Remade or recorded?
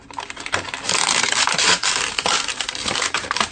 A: remade